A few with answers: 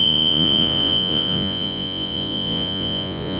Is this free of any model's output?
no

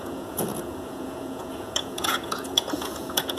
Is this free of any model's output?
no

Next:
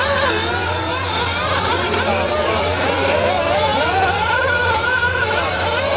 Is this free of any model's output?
yes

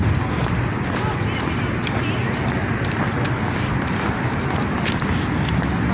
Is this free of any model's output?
yes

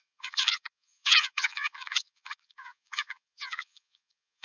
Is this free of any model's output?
no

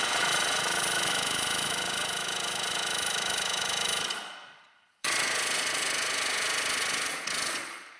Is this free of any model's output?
no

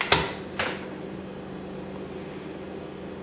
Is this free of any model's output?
yes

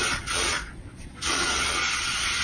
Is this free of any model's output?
no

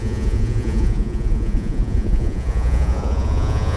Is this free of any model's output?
no